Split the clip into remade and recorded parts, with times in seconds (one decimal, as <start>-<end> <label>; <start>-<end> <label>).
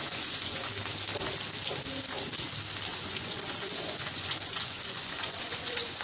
0.0-0.7 remade; 0.7-2.9 recorded; 2.9-6.0 remade